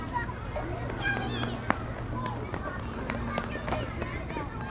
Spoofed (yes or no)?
no